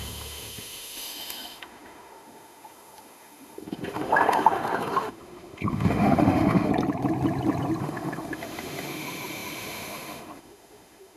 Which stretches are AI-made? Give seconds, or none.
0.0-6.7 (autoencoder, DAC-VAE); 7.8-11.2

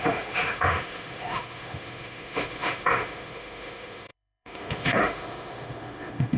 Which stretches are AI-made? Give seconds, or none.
0.0-6.4 (autoencoder, DAC-VAE)

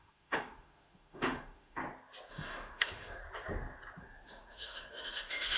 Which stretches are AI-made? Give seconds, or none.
0.0-1.8 (autoencoder, DAC-VAE); 2.3-3.2; 4.0-5.6

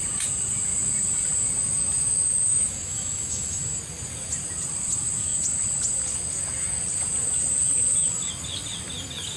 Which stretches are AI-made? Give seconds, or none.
2.5-3.6 (autoencoder, DAC-VAE)

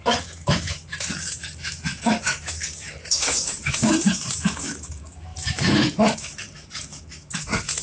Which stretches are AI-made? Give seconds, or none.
0.0-7.8 (autoencoder, DAC-VAE)

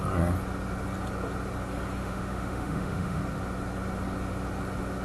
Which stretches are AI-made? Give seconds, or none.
2.0-3.2 (autoencoder, DAC-VAE)